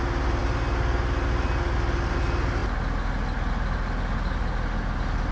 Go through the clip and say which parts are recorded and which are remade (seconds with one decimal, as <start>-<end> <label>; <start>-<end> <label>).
0.0-5.3 recorded